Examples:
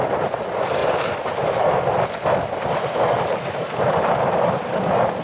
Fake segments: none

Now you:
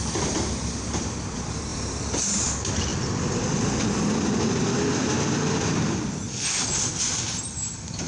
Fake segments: 0.0-8.1

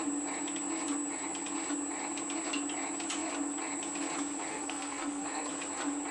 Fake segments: 4.5-5.5

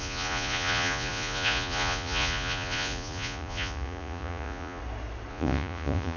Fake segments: 0.0-4.8; 5.3-6.2

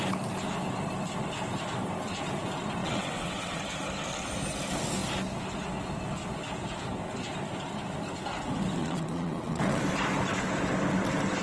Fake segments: 2.8-3.6; 8.8-9.8